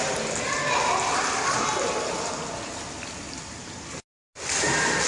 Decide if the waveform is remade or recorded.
recorded